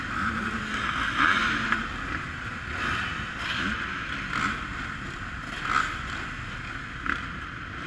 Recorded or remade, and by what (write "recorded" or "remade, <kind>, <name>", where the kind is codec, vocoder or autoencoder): recorded